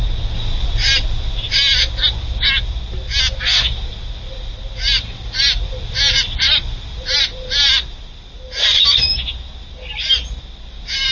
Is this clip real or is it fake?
real